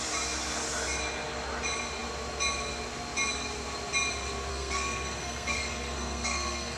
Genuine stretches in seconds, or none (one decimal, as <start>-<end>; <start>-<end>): 0.0-4.5